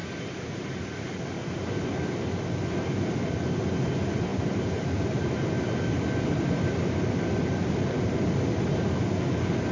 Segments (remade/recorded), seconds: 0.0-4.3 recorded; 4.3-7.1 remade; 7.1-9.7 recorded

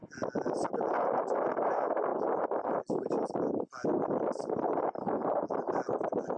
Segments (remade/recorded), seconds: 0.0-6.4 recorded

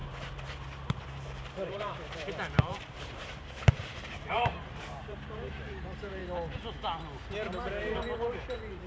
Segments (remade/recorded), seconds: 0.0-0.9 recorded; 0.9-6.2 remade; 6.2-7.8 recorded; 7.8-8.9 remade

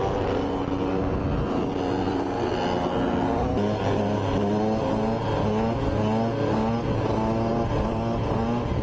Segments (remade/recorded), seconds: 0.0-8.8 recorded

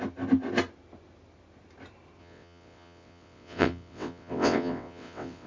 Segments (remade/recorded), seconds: 0.0-2.2 recorded; 2.2-5.5 remade